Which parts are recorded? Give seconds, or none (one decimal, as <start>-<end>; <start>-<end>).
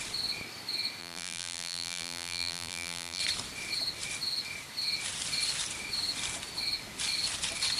0.0-1.0; 3.2-7.8